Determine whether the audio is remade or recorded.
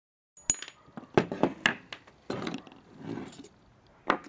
recorded